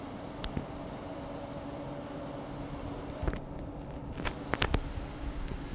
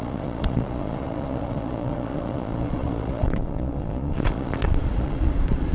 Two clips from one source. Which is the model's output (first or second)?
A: second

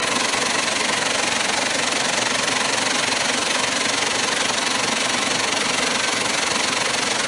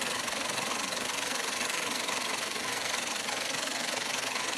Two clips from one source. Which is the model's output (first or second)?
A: second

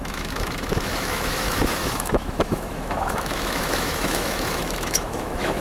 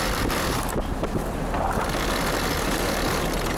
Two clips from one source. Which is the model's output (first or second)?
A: first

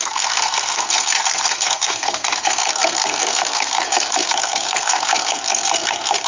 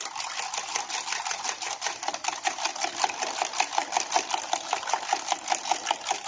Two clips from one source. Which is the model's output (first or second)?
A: first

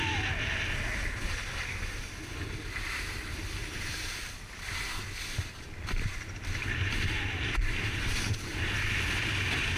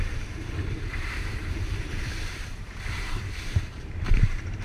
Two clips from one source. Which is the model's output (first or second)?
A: second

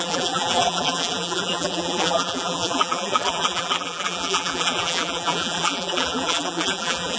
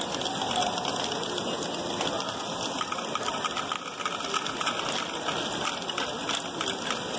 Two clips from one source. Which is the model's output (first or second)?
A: first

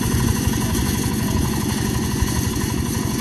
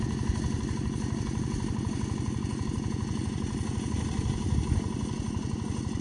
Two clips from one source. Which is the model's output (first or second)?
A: first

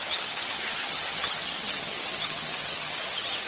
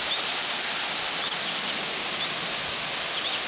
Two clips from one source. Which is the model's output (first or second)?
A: first